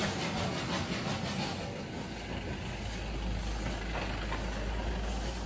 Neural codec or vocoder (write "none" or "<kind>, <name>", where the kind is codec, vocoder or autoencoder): none